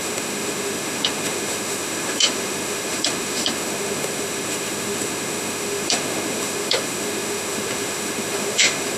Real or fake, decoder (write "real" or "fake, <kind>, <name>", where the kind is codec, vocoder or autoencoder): fake, autoencoder, DAC-VAE